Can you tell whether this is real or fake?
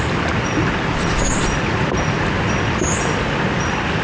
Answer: real